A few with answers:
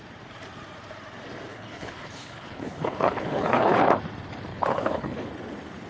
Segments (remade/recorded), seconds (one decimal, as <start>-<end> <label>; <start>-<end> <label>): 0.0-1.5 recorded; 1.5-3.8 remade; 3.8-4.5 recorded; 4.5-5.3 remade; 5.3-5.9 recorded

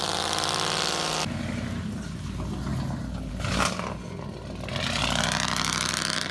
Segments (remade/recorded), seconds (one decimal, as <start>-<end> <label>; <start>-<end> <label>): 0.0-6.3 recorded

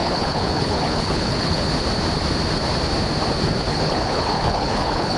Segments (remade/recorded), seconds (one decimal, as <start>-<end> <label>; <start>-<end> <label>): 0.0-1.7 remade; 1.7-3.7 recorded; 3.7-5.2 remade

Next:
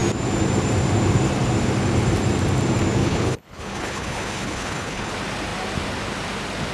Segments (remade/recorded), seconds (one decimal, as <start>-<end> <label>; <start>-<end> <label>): 0.0-3.0 recorded; 3.0-5.1 remade; 5.1-6.7 recorded